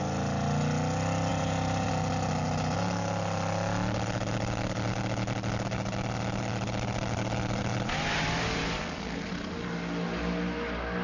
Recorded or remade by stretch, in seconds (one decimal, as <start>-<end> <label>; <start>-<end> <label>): 0.0-1.3 recorded; 1.3-1.9 remade; 1.9-7.6 recorded; 7.6-8.8 remade; 8.8-11.0 recorded